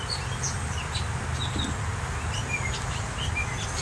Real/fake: real